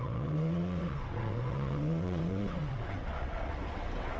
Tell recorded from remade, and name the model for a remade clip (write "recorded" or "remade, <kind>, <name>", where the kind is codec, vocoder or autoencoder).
remade, vocoder, WaveNeXt